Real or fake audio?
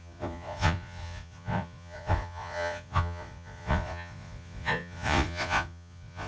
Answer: fake